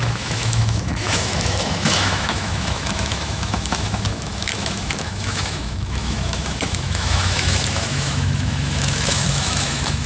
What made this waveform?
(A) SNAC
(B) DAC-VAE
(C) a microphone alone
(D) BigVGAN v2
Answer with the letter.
B